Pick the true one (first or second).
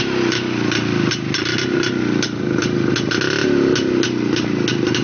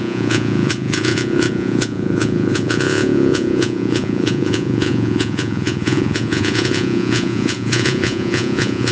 first